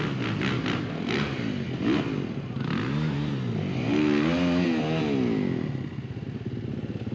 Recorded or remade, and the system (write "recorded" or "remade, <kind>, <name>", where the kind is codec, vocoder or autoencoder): recorded